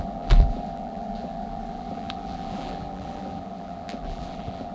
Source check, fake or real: fake